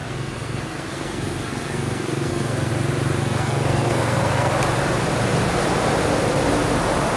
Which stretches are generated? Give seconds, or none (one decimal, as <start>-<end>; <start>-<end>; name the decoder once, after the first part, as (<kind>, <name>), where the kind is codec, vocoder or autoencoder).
0.0-2.7 (codec, SNAC); 3.2-4.5